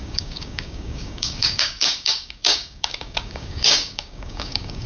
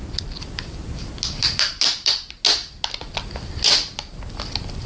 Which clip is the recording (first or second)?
second